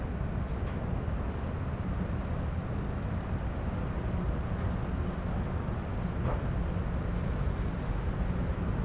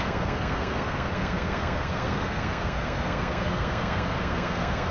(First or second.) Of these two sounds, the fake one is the second